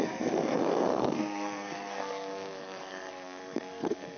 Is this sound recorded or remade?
remade